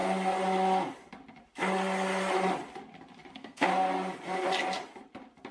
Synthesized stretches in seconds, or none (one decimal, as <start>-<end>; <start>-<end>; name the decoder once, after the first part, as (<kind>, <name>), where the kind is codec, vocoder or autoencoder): 3.3-3.7 (codec, SNAC)